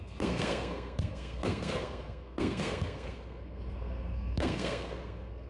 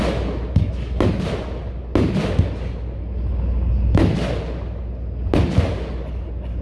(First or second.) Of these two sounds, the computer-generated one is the first